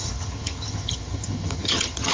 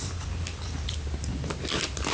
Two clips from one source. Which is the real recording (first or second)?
second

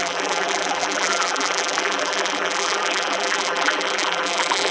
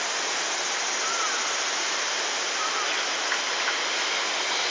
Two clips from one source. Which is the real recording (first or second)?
second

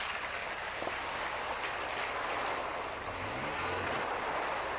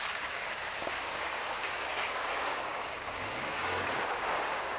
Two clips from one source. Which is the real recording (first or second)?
first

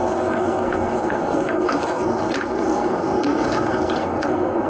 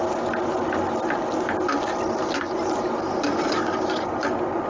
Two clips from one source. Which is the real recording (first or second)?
second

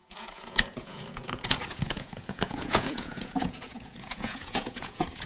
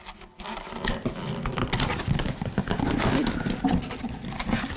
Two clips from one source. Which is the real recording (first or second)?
second